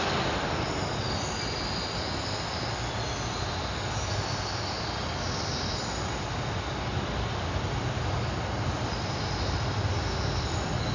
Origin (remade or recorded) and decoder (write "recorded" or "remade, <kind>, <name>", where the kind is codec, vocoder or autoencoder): recorded